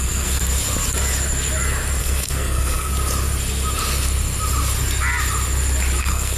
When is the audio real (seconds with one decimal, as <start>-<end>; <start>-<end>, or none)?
0.4-2.0; 2.9-6.0